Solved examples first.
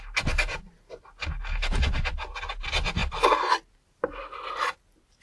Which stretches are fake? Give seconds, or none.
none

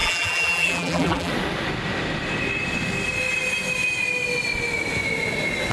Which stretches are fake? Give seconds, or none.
0.0-1.3 (vocoder, BigVGAN v2)

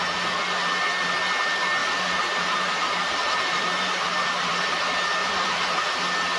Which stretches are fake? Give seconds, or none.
1.8-4.7 (vocoder, BigVGAN v2); 5.2-5.8

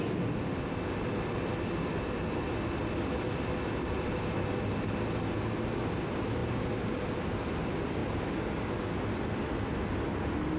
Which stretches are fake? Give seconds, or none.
8.0-8.5 (vocoder, BigVGAN v2)

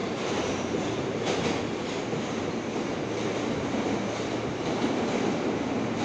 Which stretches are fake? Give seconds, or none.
0.0-1.6 (vocoder, BigVGAN v2); 3.3-4.4

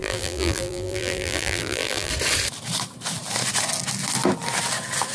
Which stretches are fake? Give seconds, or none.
0.0-2.1 (vocoder, BigVGAN v2)